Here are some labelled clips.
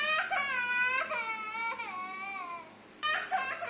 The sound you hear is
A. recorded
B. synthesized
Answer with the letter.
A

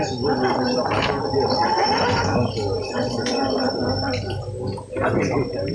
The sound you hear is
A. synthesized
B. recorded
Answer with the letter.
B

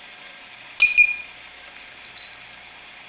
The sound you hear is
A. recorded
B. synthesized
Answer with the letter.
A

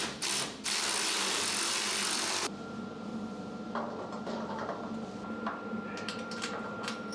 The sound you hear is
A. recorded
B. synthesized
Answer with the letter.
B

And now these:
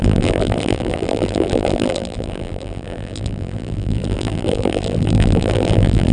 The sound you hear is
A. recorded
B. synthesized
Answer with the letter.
B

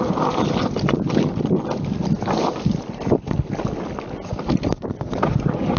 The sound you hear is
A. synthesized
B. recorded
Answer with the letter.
B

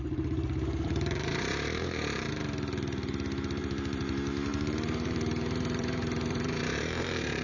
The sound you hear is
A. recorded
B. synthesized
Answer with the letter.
B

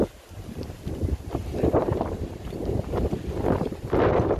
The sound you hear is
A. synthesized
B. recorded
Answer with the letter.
A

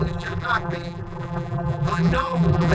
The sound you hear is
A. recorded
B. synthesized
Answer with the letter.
B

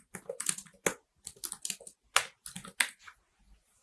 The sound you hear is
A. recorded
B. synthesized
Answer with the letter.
A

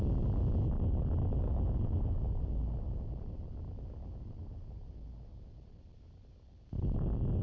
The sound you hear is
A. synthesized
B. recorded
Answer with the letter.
B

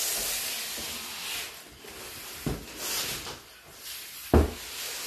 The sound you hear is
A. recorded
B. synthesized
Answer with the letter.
A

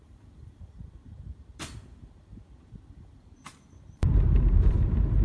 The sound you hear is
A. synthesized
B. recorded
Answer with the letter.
A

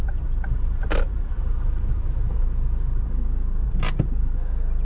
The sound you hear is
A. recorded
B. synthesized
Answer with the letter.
A